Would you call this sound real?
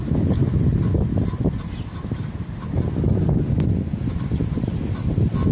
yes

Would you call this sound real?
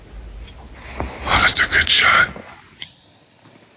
yes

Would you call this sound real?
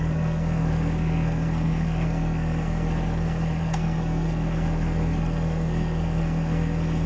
no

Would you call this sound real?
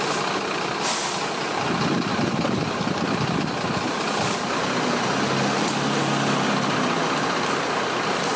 yes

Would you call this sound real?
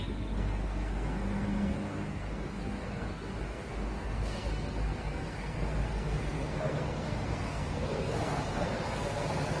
no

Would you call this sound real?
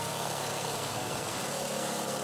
no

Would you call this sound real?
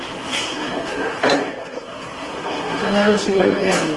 no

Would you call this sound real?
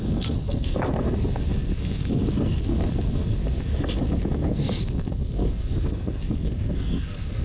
no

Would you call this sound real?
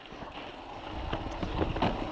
yes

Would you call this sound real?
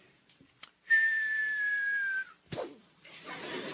yes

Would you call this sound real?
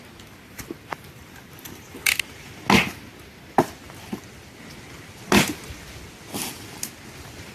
yes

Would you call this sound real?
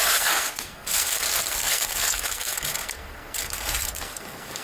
no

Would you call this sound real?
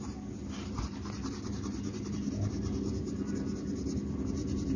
yes